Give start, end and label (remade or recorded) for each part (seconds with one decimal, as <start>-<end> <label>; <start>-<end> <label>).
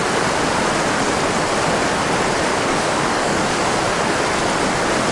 0.0-2.5 recorded; 2.5-3.8 remade; 3.8-5.1 recorded